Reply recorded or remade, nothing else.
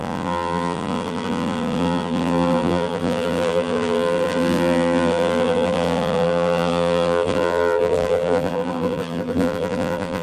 remade